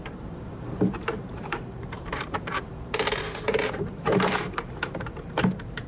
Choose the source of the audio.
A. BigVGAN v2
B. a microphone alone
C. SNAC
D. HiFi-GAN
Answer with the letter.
A